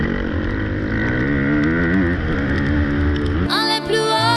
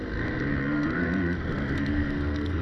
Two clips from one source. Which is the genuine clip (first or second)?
first